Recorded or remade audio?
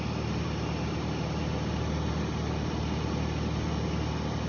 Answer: recorded